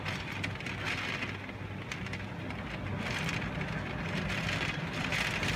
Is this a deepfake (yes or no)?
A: no